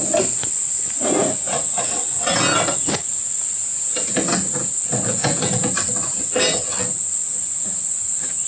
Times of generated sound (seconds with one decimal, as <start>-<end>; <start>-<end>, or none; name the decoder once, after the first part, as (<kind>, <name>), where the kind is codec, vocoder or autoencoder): 3.6-4.2 (vocoder, Vocos); 5.1-5.7